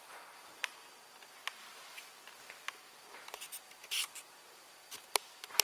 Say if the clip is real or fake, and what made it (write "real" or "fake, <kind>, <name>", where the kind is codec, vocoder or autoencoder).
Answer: real